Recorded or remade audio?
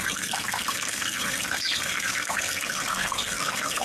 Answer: remade